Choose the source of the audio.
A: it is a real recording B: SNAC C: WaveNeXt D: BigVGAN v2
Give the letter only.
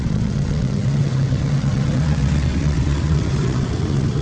C